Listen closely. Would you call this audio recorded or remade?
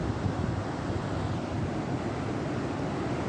recorded